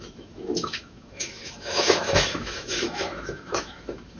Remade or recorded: remade